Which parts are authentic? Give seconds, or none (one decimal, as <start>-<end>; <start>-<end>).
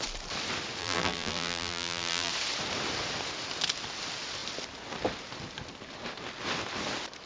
0.0-0.8; 2.3-7.3